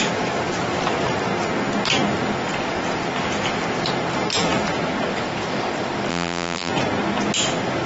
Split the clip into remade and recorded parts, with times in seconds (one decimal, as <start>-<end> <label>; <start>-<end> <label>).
0.0-6.1 recorded; 6.1-6.7 remade; 6.7-7.9 recorded